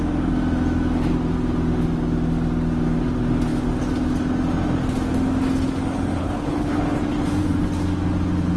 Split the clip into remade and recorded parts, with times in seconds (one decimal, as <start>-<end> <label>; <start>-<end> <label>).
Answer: 0.0-6.2 recorded; 6.2-6.8 remade; 6.8-8.6 recorded